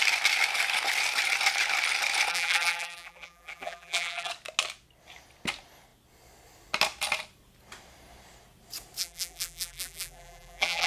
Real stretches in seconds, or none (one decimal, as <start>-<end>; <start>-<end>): 0.0-2.3; 4.3-9.0